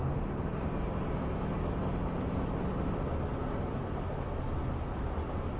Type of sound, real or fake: real